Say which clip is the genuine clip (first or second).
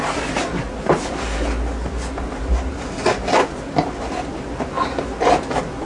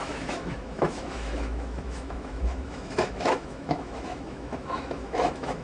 first